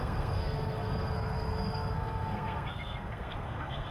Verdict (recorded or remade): remade